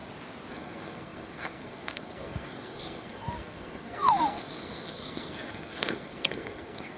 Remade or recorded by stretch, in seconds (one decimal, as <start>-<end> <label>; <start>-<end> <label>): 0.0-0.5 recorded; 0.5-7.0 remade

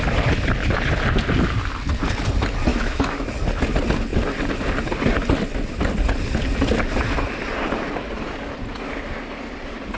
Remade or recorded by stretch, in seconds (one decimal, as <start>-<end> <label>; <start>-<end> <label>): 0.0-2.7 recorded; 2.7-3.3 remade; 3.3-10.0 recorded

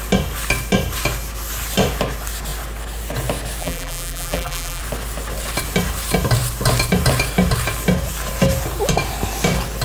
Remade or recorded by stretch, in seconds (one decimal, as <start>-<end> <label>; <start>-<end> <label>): 0.0-3.6 recorded; 3.6-4.8 remade; 4.8-9.8 recorded